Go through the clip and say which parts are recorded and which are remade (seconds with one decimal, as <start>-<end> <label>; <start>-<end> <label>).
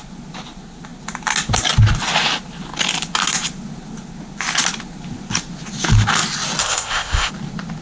0.0-6.6 recorded; 6.6-7.3 remade; 7.3-7.8 recorded